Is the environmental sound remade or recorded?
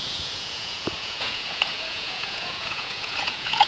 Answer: remade